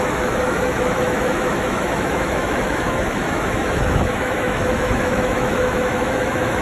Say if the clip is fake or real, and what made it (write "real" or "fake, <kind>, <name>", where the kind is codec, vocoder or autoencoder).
fake, autoencoder, DAC-VAE